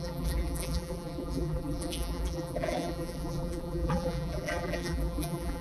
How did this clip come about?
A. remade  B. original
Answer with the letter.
A